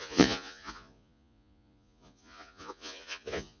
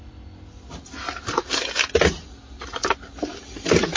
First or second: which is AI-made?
first